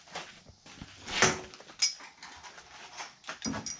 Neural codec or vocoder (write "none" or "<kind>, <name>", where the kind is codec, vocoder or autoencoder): none